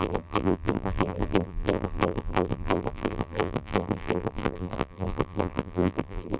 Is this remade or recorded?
remade